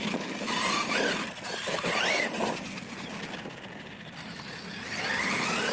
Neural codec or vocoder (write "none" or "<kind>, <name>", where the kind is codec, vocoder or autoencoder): none